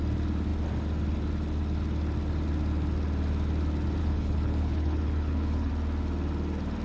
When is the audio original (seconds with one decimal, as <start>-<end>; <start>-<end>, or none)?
0.0-4.0; 5.7-6.8